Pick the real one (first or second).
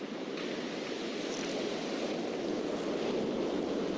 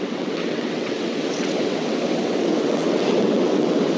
first